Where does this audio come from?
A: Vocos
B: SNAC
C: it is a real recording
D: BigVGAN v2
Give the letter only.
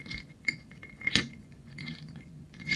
A